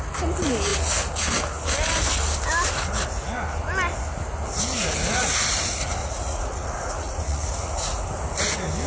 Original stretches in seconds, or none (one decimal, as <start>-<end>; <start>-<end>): 0.0-6.0; 8.0-8.9